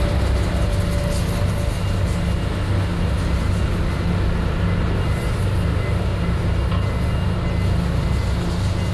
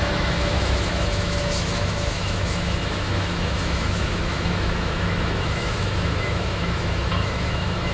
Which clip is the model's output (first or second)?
second